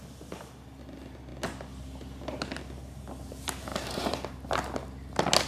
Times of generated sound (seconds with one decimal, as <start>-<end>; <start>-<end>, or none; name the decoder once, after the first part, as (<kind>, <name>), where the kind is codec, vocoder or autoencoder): 3.7-4.4 (vocoder, BigVGAN v2)

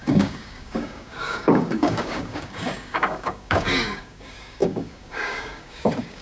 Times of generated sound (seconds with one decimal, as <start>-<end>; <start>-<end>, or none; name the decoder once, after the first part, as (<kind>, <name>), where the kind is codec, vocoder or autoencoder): 0.0-6.2 (codec, DAC)

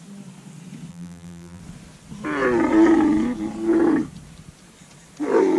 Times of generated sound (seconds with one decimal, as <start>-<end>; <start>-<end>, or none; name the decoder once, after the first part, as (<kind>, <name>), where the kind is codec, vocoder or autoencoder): 0.9-1.6 (vocoder, BigVGAN v2)

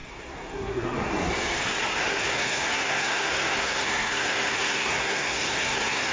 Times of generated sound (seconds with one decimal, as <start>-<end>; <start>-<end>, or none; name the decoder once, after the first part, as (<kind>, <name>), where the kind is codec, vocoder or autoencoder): 0.0-1.3 (codec, SNAC); 2.1-6.1

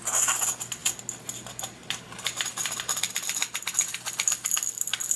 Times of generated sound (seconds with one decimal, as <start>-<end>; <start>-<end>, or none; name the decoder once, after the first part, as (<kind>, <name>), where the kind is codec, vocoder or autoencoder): none

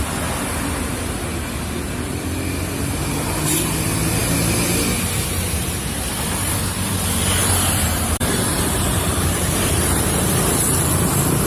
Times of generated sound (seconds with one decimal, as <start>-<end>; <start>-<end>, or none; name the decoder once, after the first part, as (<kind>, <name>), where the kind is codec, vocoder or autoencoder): 7.4-10.4 (vocoder, BigVGAN v2)

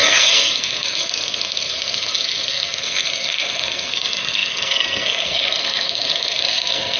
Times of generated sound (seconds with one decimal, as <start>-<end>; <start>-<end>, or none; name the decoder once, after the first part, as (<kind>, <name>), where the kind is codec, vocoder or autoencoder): 0.0-7.0 (codec, SNAC)

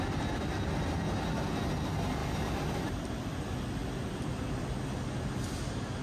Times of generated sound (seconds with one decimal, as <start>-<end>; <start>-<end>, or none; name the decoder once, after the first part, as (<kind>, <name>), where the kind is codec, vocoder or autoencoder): 2.2-3.4 (vocoder, BigVGAN v2); 3.8-4.6